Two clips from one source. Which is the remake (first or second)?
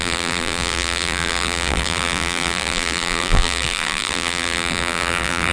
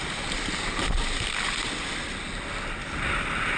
first